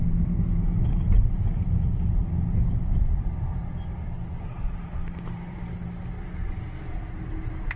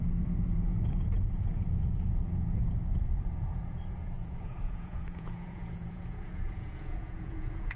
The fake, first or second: second